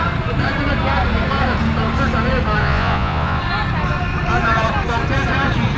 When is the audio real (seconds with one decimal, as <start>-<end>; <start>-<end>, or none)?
0.0-2.6; 3.4-5.8